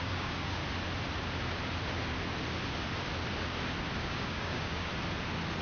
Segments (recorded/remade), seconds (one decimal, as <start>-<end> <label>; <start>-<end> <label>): 0.0-0.6 remade; 0.6-4.0 recorded; 4.0-4.9 remade; 4.9-5.6 recorded